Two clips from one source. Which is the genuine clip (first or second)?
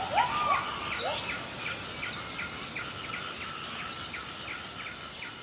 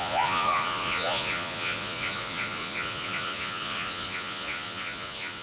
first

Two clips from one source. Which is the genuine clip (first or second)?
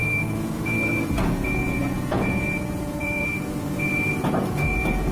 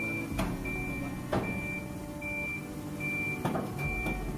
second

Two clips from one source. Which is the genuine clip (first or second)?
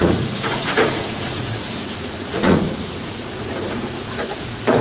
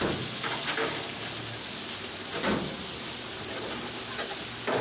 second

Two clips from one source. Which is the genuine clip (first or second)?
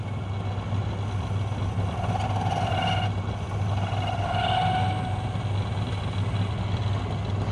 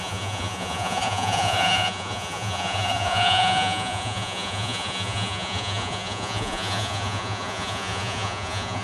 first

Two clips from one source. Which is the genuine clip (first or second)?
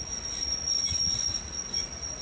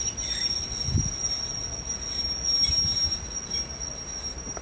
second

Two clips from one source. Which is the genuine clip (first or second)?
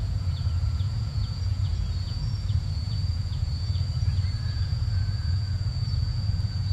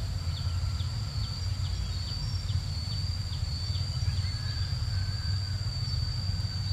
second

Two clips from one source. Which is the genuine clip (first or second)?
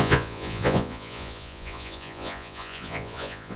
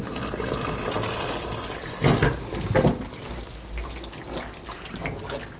second